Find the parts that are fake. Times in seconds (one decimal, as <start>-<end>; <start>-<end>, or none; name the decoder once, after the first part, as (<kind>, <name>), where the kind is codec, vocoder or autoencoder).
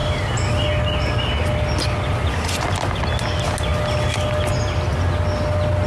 none